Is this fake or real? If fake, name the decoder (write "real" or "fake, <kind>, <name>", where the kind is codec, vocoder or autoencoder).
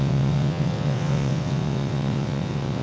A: fake, vocoder, WaveNeXt